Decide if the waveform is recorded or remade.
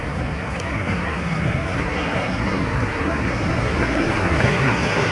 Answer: remade